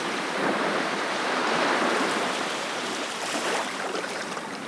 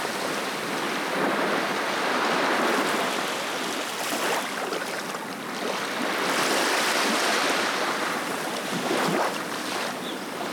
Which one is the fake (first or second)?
first